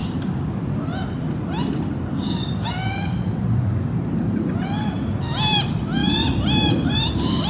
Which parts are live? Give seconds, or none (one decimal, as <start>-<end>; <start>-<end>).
0.0-6.0; 7.1-7.5